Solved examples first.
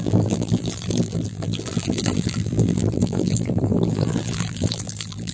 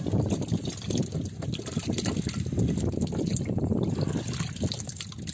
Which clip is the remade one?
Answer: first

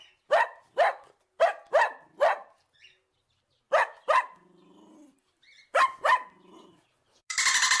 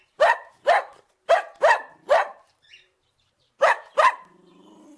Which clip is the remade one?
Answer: second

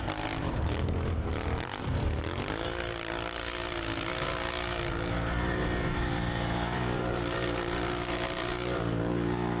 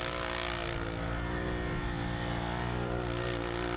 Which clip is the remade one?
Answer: first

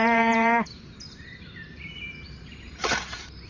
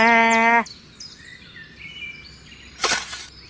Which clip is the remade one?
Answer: first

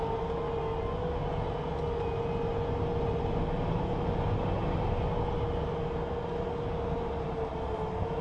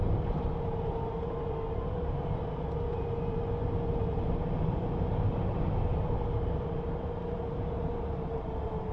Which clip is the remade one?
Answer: second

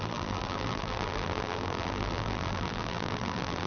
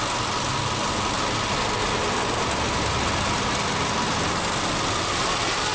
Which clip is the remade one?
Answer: first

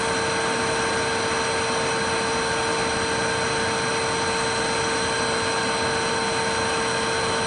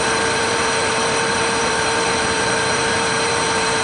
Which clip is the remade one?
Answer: second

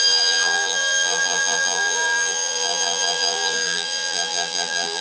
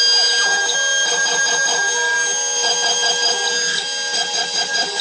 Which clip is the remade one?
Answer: first